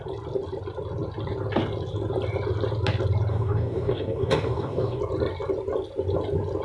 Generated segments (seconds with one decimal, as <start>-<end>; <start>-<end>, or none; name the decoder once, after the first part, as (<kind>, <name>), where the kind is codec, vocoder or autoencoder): 3.3-5.0 (codec, DAC)

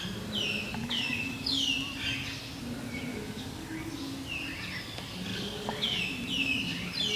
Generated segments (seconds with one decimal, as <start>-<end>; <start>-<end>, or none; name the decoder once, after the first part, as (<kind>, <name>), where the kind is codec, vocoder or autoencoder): 0.8-1.7 (codec, DAC); 3.1-3.9; 5.3-6.0